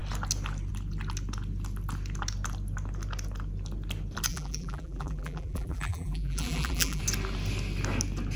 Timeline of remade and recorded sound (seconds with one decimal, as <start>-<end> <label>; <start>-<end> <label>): 0.0-4.3 recorded; 4.3-7.0 remade; 7.0-8.4 recorded